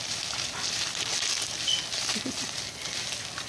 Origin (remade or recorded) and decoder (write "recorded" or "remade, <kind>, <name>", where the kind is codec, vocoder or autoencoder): recorded